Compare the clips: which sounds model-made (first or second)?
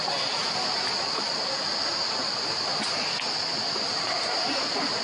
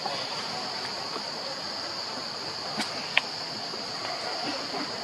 second